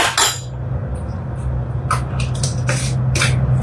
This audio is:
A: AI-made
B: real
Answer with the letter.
B